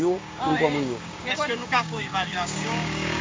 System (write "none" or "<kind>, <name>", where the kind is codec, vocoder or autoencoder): codec, DAC